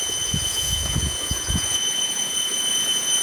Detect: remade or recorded remade